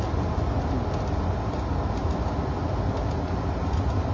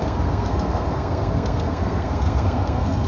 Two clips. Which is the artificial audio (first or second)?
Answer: second